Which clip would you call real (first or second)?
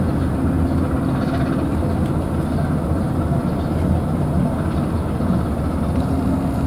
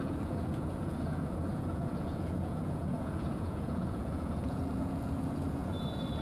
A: first